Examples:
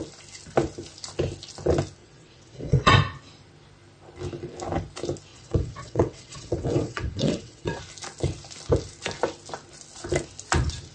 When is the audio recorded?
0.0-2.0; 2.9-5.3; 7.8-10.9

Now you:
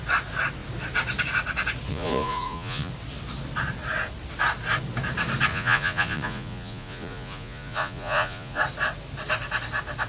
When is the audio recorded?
0.0-1.9; 2.9-5.5; 8.6-10.1

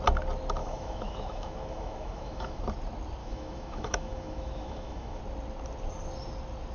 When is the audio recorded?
0.0-0.6; 2.6-3.2; 5.2-6.7

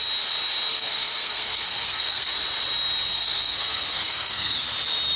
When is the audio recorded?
0.0-0.7; 2.3-3.1; 4.6-5.2

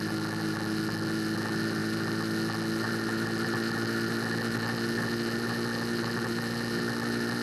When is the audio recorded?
0.0-7.4

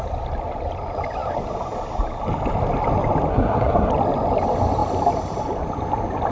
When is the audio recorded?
0.0-3.3; 3.9-6.3

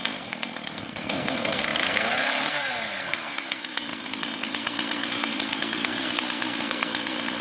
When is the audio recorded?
none